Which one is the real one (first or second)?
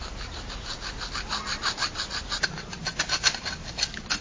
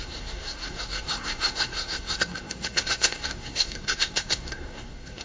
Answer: first